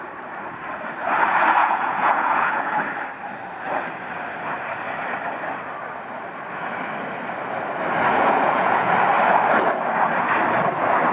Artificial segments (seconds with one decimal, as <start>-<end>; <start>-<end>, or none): 1.6-2.8; 8.1-8.9